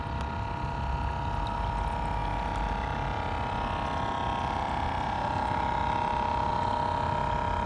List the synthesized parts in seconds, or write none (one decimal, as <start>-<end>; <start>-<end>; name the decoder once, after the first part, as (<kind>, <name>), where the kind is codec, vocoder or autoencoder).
none